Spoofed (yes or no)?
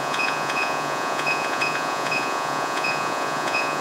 yes